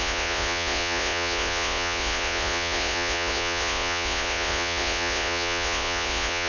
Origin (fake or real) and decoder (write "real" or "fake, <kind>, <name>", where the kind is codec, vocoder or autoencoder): fake, vocoder, Vocos